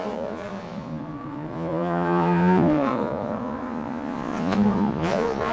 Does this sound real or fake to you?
fake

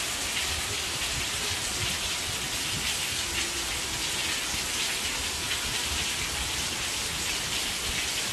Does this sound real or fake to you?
real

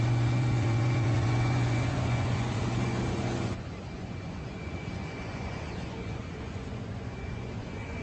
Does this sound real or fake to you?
fake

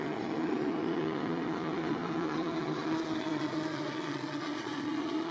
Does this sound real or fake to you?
fake